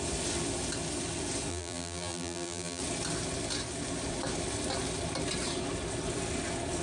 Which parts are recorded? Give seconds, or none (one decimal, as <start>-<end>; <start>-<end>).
0.0-1.5; 2.8-6.8